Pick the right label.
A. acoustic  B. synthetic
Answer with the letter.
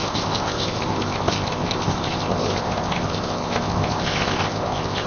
B